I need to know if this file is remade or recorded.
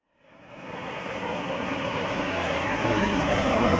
remade